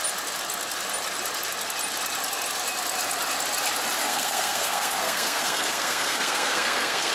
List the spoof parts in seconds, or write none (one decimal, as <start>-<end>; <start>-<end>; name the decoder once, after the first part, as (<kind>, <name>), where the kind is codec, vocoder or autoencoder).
4.0-7.1 (codec, SNAC)